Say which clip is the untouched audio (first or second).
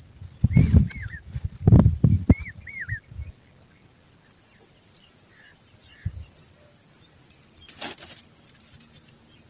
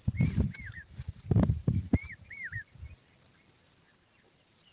first